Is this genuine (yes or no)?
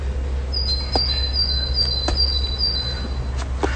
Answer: yes